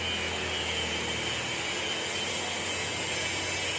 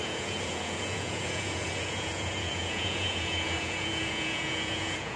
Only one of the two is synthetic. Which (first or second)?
second